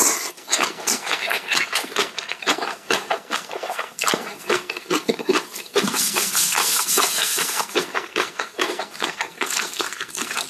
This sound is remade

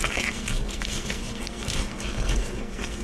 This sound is remade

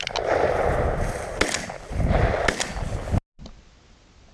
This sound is recorded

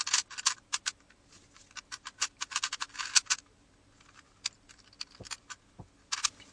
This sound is recorded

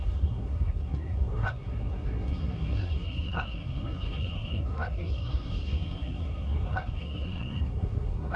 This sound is remade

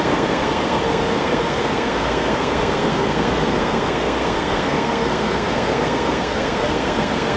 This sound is remade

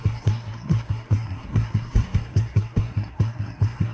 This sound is remade